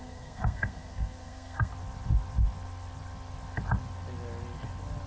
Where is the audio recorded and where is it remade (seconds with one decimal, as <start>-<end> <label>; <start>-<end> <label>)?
0.0-1.7 remade; 1.7-5.1 recorded